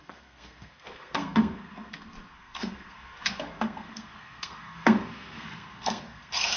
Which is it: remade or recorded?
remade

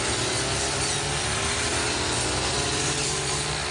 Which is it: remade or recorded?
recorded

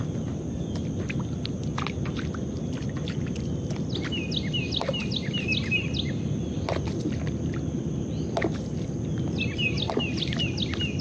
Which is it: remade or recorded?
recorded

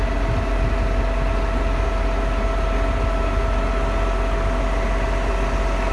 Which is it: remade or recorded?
recorded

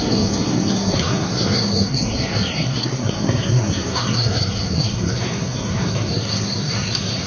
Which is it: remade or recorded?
remade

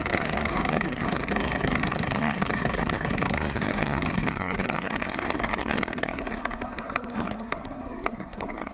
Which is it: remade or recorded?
remade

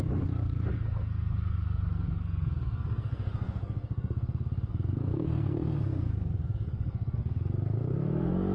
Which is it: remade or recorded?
remade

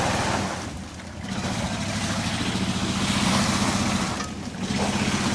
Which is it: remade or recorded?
recorded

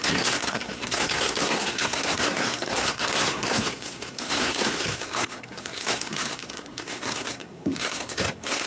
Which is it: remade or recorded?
remade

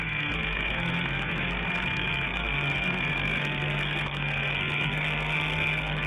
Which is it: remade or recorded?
remade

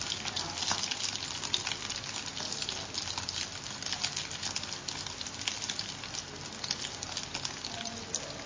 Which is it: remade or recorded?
recorded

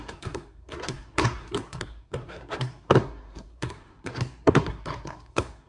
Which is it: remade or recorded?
remade